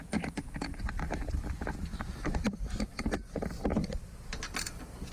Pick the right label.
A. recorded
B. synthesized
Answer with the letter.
A